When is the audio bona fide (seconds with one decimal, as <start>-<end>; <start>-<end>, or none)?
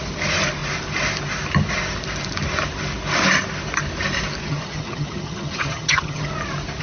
0.0-4.4; 6.3-6.8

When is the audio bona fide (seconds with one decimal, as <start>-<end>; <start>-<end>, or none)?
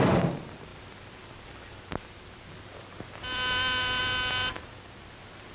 0.0-5.5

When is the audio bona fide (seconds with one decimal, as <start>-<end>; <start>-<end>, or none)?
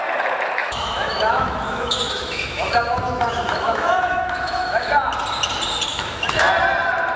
0.0-0.6; 4.9-5.9; 6.5-7.2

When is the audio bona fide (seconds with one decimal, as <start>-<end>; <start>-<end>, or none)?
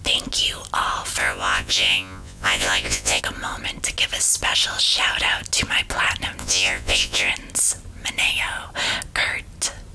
0.0-1.2; 3.2-6.4; 7.3-9.9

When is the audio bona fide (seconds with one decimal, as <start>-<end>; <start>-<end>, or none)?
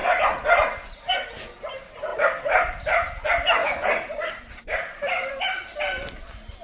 0.0-2.1; 2.8-3.6; 5.3-6.6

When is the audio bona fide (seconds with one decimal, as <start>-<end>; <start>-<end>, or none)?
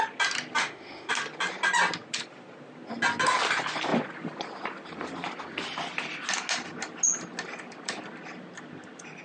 0.0-0.6; 1.1-9.2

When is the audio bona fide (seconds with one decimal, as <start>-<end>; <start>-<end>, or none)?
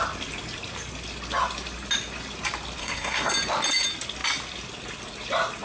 0.0-2.8; 3.3-5.6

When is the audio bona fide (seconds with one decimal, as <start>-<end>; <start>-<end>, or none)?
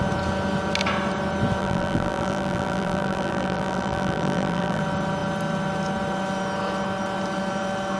0.0-1.6; 4.8-8.0